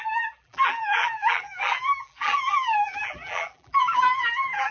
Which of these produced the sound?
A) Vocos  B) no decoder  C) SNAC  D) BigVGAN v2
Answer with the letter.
D